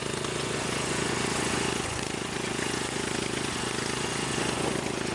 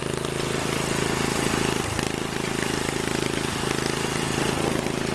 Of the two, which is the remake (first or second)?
first